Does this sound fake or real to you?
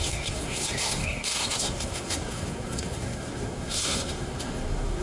fake